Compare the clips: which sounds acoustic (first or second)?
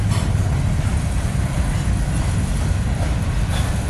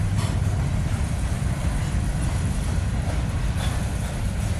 first